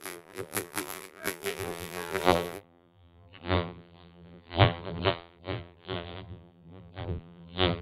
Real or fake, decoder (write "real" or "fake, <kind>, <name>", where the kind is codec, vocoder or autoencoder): fake, vocoder, BigVGAN v2